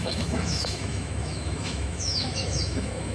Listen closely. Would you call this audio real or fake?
fake